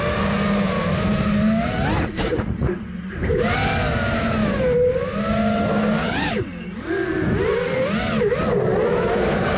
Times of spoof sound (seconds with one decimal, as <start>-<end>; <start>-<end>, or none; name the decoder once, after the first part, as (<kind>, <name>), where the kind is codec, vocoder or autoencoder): 2.3-2.8 (vocoder, Vocos)